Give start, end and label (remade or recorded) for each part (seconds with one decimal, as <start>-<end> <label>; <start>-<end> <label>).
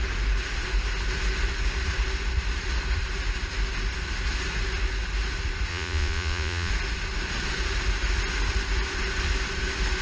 0.0-5.7 recorded; 5.7-6.7 remade; 6.7-10.0 recorded